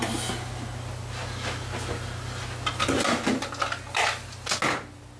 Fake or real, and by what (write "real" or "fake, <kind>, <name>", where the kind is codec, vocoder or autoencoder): real